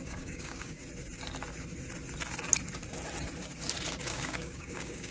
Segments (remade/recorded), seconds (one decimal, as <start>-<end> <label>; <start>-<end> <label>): 0.0-0.8 remade; 0.8-3.9 recorded; 3.9-5.1 remade